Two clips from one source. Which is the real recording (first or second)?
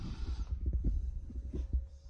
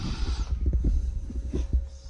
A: second